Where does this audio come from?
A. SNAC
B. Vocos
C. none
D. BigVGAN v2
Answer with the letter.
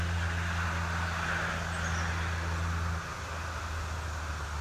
C